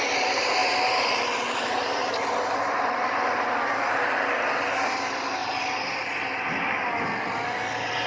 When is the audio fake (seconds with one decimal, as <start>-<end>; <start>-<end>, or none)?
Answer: none